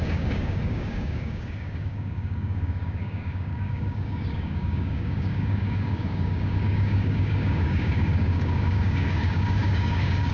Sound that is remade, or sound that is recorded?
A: remade